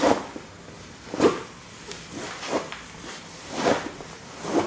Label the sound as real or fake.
real